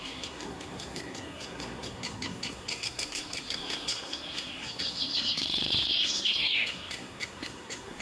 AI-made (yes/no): yes